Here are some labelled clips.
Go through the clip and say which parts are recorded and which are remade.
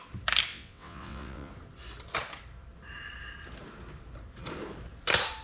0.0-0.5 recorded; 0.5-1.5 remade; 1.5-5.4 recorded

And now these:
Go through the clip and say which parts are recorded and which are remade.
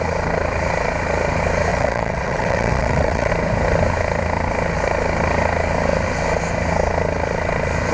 0.0-1.7 recorded; 1.7-3.3 remade; 3.3-7.9 recorded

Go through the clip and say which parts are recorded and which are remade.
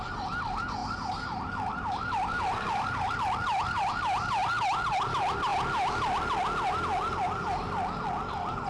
0.0-8.7 recorded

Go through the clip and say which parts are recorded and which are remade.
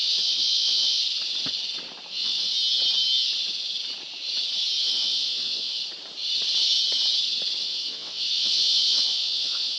0.0-1.0 remade; 1.0-2.1 recorded; 2.1-2.5 remade; 2.5-4.8 recorded; 4.8-5.8 remade; 5.8-7.6 recorded; 7.6-9.8 remade